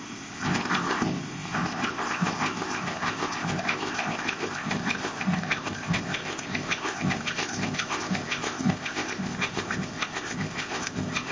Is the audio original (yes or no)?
no